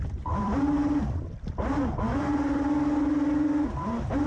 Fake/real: fake